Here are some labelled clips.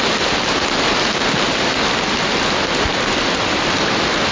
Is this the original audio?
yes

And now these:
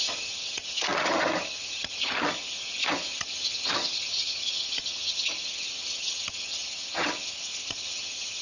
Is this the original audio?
no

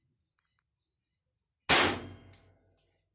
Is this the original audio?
yes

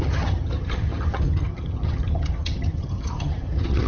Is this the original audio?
no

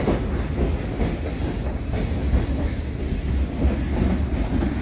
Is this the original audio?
yes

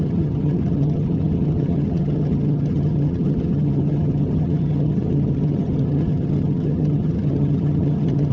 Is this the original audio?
no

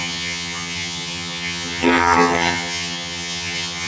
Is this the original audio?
no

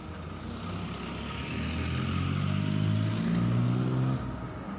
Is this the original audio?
yes